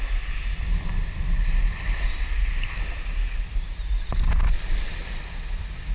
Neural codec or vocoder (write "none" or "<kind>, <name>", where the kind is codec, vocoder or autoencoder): none